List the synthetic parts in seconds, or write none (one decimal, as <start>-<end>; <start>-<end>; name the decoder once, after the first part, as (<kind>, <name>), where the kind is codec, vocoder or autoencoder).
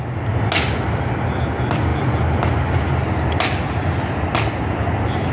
none